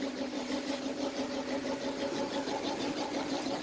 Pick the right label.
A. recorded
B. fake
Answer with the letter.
A